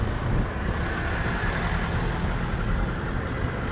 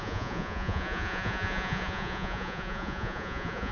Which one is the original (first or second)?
first